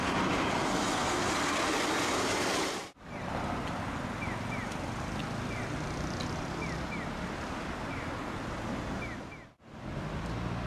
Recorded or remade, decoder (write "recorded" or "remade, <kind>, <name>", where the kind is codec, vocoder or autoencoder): recorded